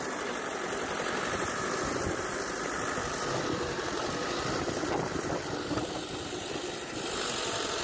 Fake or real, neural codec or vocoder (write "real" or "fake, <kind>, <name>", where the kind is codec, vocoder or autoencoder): fake, vocoder, BigVGAN v2